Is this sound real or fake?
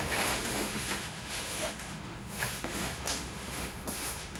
fake